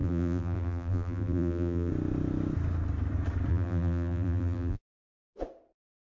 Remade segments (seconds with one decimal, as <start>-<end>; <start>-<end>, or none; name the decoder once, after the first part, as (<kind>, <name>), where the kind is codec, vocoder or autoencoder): 0.0-1.9 (vocoder, BigVGAN v2); 3.5-4.8